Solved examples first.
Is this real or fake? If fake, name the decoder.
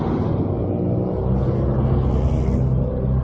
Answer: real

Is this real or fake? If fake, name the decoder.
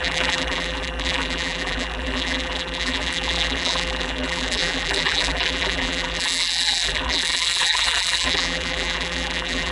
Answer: fake, vocoder, BigVGAN v2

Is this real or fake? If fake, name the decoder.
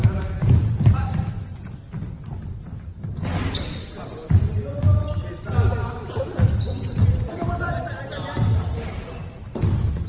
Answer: real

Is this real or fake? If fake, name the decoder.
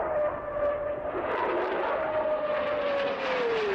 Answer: real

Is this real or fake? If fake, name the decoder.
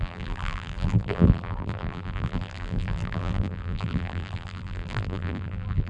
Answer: fake, vocoder, BigVGAN v2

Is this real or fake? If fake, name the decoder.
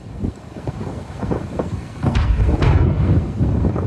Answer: fake, codec, SNAC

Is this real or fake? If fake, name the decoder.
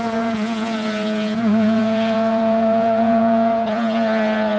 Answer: fake, vocoder, Vocos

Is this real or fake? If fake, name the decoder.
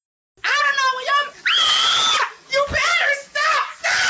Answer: real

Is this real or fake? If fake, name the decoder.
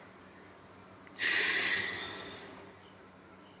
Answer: real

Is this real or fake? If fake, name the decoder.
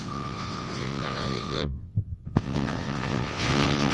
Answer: fake, vocoder, WaveNeXt